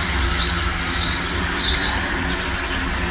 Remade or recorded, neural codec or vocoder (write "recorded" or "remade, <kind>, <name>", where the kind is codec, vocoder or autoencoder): recorded